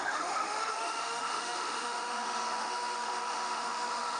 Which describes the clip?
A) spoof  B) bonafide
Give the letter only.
A